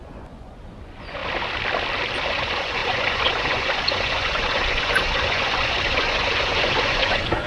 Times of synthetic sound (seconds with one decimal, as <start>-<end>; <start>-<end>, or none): 0.0-1.2; 2.3-7.5